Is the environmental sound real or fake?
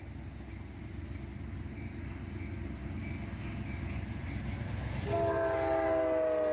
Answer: real